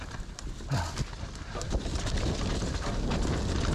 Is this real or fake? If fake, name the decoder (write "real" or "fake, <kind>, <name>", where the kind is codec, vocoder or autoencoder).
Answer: real